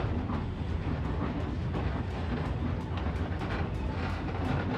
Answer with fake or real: real